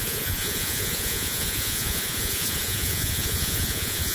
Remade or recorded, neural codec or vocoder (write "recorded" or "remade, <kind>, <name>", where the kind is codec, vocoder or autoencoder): remade, vocoder, Vocos